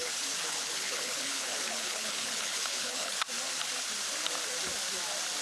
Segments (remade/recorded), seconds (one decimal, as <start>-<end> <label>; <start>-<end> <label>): 0.0-3.2 remade; 3.2-5.4 recorded